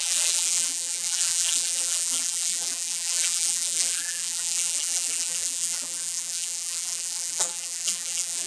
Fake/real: fake